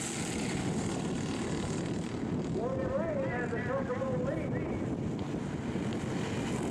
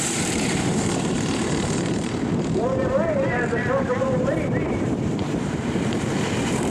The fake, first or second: second